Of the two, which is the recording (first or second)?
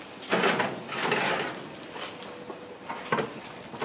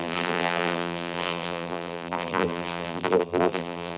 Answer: first